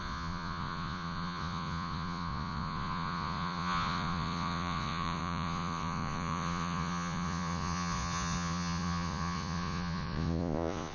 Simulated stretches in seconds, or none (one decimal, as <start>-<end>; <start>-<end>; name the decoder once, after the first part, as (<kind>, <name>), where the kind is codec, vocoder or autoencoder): 0.0-10.9 (vocoder, Vocos)